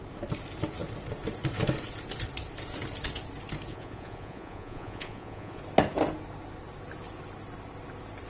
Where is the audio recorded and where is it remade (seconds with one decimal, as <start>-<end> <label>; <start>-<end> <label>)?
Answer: 0.0-3.7 recorded; 3.7-5.6 remade; 5.6-8.3 recorded